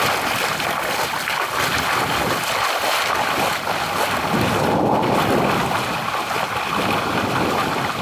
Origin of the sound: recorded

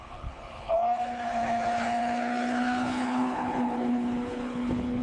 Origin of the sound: remade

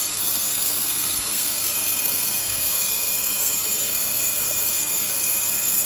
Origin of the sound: remade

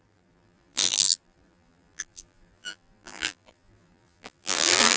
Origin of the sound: remade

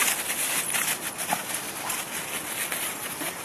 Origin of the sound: recorded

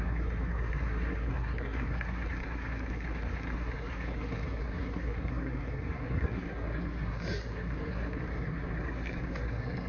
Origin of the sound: remade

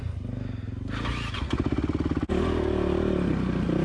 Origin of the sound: recorded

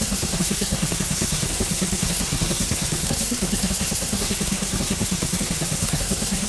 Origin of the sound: remade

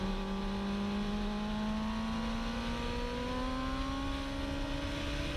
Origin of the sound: recorded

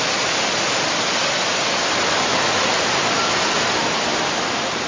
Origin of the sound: recorded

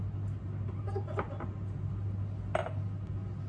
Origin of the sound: recorded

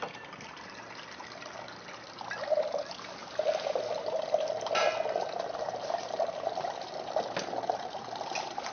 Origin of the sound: recorded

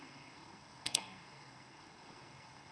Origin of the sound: remade